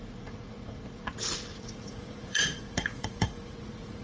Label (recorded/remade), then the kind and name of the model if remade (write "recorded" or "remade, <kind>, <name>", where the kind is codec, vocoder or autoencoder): remade, vocoder, Vocos